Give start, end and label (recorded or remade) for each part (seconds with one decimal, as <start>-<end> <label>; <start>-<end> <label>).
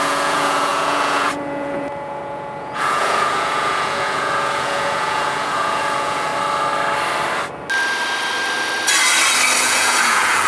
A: 0.0-6.3 remade; 6.3-9.6 recorded; 9.6-10.5 remade